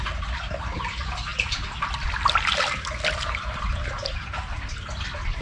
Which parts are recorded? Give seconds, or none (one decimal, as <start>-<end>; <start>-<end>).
0.0-5.4